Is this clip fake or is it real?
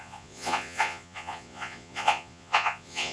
fake